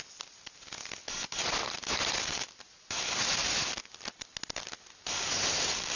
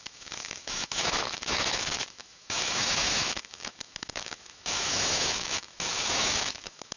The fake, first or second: second